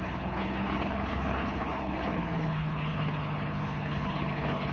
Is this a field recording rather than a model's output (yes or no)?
no